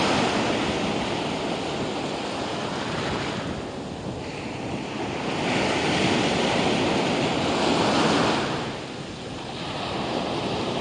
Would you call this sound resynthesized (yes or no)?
no